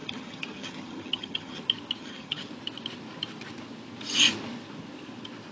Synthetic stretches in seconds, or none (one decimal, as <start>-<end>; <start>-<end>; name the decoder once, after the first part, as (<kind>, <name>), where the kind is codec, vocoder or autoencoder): 0.0-1.6 (vocoder, HiFi-GAN); 2.0-2.5